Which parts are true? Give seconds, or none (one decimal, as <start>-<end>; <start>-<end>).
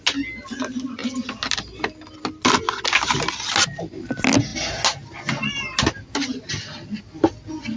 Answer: 0.0-7.8